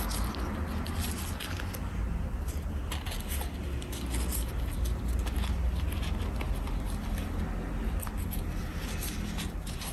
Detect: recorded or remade recorded